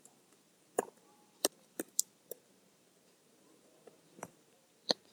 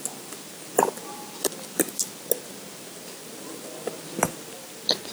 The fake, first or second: first